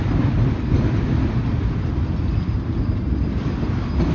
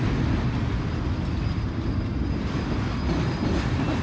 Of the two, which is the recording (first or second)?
second